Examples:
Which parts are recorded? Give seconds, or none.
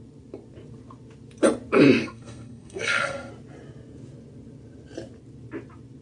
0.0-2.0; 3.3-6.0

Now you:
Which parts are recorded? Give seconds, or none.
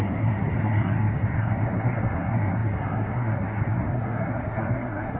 none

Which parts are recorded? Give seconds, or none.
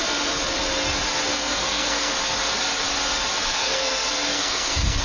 0.0-1.3; 2.1-3.4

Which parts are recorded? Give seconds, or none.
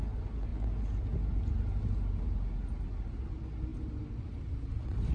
0.0-5.1